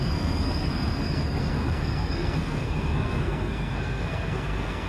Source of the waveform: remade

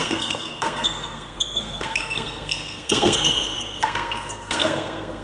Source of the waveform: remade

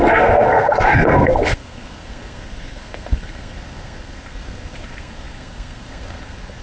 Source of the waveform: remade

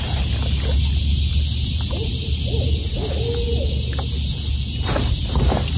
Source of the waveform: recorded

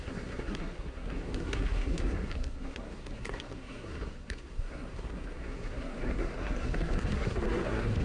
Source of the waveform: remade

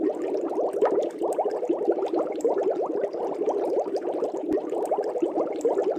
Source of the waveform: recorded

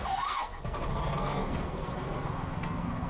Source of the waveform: remade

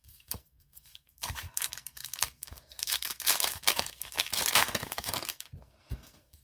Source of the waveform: remade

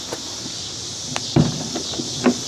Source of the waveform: recorded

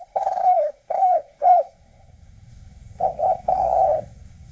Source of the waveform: remade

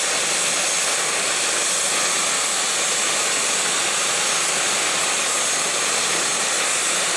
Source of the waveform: recorded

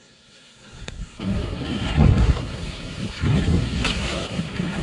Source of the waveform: remade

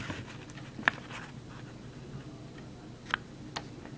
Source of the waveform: recorded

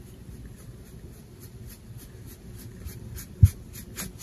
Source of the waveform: recorded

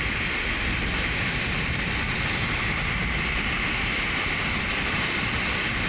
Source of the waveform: recorded